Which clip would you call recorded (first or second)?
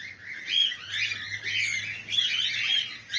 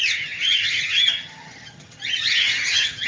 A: first